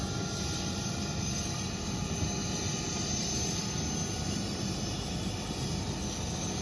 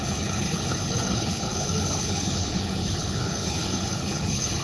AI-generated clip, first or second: second